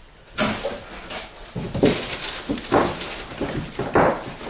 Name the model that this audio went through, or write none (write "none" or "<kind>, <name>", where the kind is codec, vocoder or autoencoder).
none